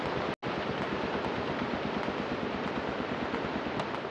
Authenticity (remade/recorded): recorded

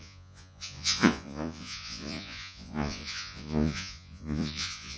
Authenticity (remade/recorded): remade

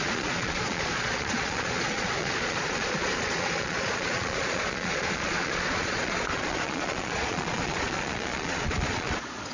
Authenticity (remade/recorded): remade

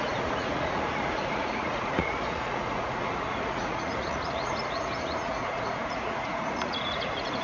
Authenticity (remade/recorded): remade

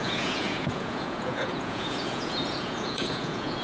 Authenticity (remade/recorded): remade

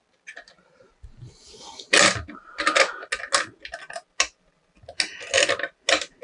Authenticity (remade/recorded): recorded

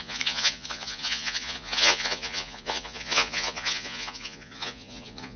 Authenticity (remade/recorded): remade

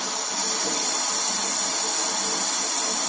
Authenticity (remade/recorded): recorded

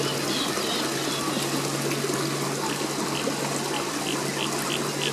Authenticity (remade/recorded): recorded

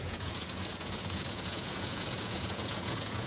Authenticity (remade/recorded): remade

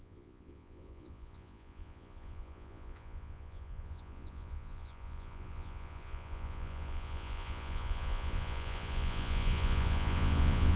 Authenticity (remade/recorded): remade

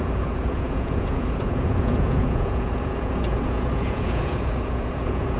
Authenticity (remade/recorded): remade